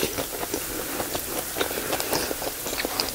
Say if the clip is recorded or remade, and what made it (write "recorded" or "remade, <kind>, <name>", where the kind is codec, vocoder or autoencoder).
recorded